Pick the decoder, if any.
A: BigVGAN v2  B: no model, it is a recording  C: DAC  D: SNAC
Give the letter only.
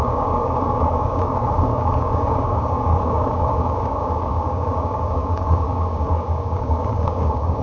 C